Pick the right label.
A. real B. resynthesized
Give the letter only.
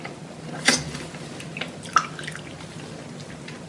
A